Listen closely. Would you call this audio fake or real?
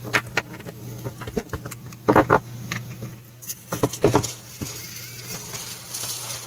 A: real